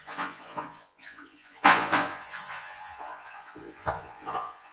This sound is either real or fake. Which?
fake